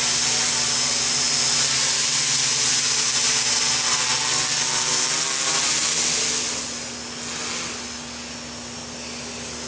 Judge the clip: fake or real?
real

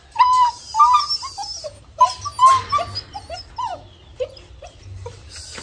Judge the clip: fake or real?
real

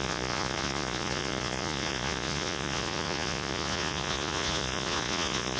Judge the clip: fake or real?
fake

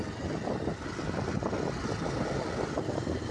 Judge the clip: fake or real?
real